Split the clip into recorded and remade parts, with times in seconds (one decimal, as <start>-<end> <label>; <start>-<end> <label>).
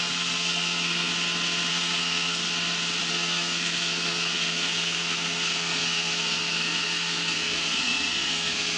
0.0-1.1 remade; 1.1-1.7 recorded; 1.7-2.4 remade; 2.4-3.1 recorded; 3.1-8.8 remade